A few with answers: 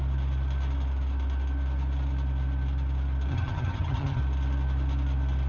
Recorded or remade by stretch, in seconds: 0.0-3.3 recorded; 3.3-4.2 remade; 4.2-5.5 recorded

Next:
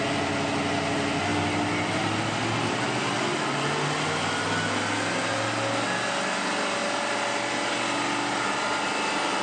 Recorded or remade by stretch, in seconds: 0.0-9.4 recorded

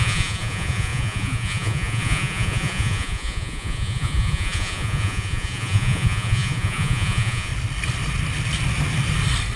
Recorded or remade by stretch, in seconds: 0.0-7.5 remade; 7.5-9.6 recorded

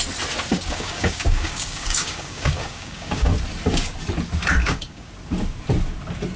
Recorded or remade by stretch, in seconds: 0.0-0.5 recorded; 0.5-3.3 remade; 3.3-4.6 recorded; 4.6-5.1 remade; 5.1-6.4 recorded

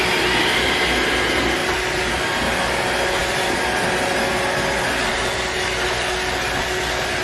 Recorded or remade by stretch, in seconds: 0.0-7.2 recorded